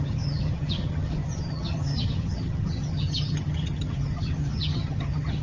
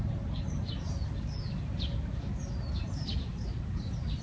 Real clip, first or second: second